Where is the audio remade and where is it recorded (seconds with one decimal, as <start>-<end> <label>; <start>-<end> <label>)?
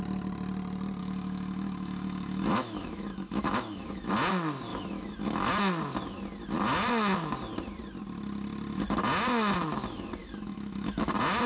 0.0-1.0 recorded; 1.0-4.1 remade; 4.1-4.7 recorded; 4.7-5.5 remade; 5.5-10.2 recorded; 10.2-11.1 remade; 11.1-11.5 recorded